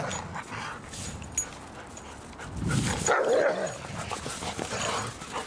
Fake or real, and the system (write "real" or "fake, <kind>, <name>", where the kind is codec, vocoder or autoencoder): real